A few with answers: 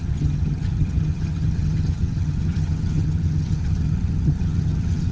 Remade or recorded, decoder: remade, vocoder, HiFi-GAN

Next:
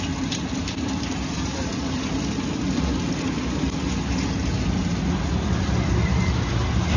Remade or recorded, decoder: recorded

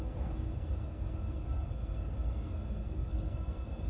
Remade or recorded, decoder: remade, codec, SNAC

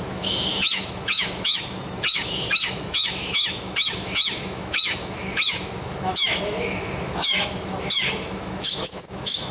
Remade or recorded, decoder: remade, autoencoder, DAC-VAE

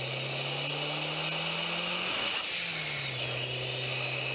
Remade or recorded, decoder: recorded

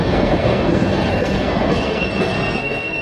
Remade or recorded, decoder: remade, codec, SNAC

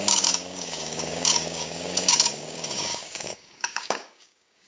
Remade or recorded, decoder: remade, codec, DAC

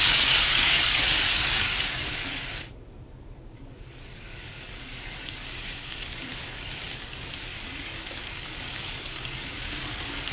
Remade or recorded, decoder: remade, codec, DAC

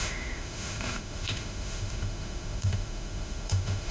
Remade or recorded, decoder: remade, autoencoder, DAC-VAE